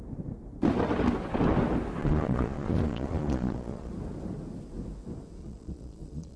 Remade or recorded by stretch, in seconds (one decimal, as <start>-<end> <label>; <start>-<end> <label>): 0.0-2.0 recorded; 2.0-3.9 remade; 3.9-5.4 recorded; 5.4-6.4 remade

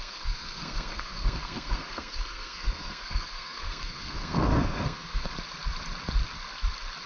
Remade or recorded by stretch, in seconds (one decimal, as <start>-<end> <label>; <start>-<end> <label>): 0.0-5.3 remade; 5.3-7.1 recorded

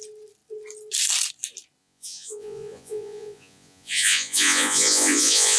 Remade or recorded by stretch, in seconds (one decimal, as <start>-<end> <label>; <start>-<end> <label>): 0.0-1.8 recorded; 1.8-5.6 remade

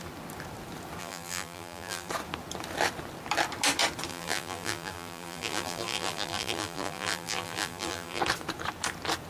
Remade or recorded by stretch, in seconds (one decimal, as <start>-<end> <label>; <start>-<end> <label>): 0.0-1.0 recorded; 1.0-2.1 remade; 2.1-4.1 recorded; 4.1-8.2 remade; 8.2-9.3 recorded

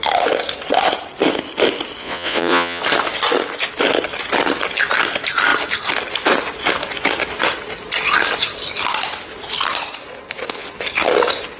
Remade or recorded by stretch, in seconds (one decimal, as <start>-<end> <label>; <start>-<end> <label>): 0.0-2.0 recorded; 2.0-2.8 remade; 2.8-11.6 recorded

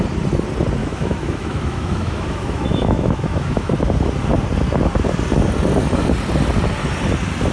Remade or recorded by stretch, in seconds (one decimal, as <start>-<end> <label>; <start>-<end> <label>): 0.0-0.8 recorded; 0.8-3.7 remade; 3.7-7.5 recorded

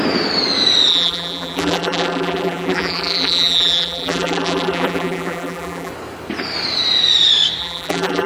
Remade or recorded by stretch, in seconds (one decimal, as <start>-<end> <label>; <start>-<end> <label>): 0.0-0.9 recorded; 0.9-5.9 remade; 5.9-7.6 recorded; 7.6-8.3 remade

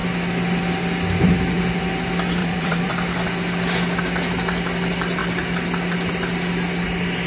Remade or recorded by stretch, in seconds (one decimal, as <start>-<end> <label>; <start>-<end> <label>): 0.0-2.4 recorded; 2.4-2.9 remade; 2.9-7.3 recorded